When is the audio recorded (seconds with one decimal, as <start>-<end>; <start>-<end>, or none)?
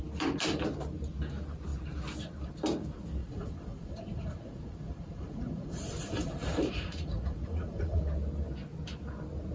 0.0-3.2; 8.0-9.5